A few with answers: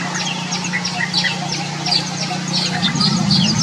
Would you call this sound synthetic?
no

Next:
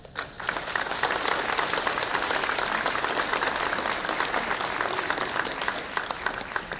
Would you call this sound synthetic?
no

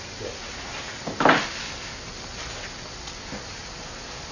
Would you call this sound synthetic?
no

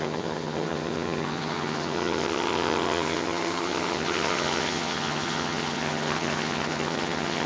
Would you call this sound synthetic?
yes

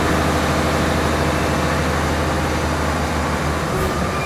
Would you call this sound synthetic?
no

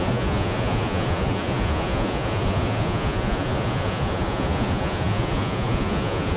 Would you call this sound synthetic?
yes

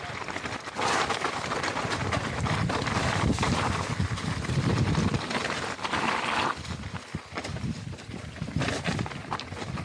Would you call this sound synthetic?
no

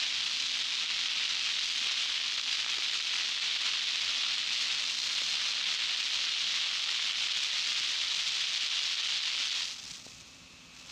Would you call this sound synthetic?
no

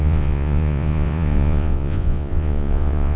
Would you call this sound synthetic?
yes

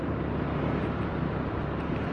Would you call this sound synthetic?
no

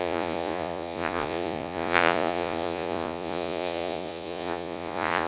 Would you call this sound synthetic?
yes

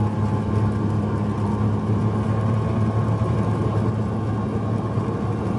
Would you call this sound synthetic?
no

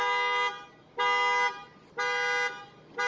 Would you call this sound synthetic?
no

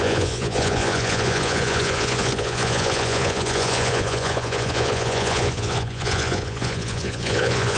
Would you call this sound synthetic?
yes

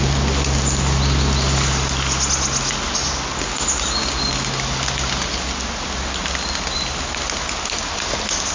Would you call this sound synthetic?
no